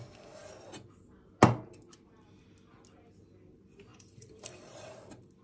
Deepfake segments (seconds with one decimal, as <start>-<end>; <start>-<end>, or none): 3.9-4.9